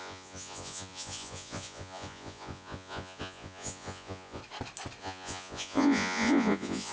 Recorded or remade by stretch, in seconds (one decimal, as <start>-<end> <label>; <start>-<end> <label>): 0.0-4.4 remade; 4.4-5.0 recorded; 5.0-6.9 remade